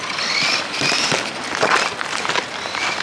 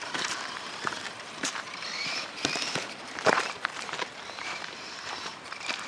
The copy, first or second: second